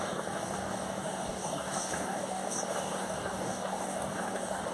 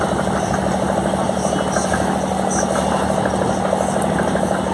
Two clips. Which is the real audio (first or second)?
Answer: second